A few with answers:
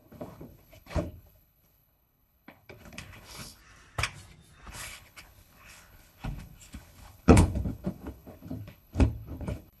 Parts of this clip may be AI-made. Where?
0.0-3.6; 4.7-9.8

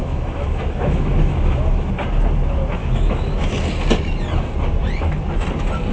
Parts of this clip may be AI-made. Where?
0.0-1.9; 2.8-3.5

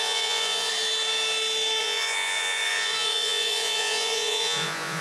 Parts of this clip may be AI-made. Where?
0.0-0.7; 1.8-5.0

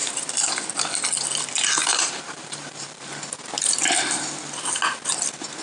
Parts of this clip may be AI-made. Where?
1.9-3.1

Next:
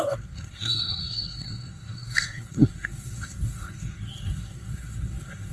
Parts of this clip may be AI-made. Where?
0.0-5.5

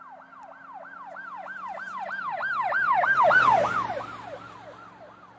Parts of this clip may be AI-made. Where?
none

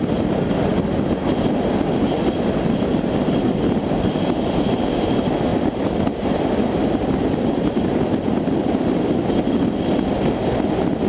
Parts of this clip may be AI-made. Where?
none